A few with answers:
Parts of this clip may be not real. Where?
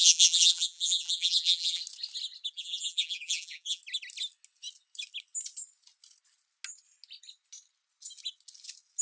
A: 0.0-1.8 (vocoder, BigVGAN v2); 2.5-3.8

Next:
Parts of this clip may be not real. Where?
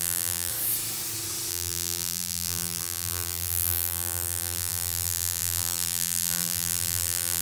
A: 0.0-0.5 (vocoder, BigVGAN v2); 1.5-7.4